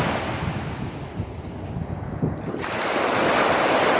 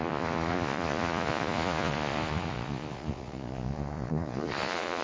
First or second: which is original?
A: first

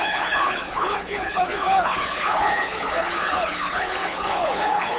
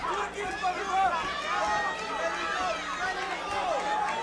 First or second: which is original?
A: second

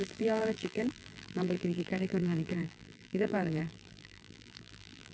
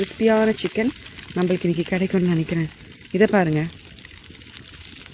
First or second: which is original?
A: second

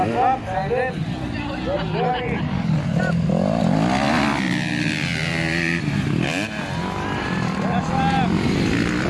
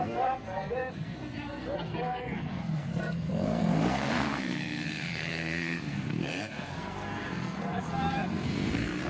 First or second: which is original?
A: first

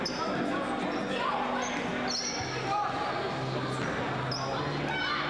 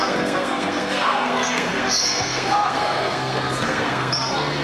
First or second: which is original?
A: first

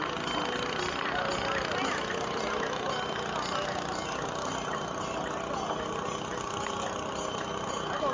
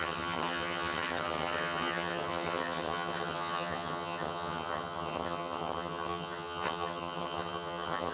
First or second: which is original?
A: first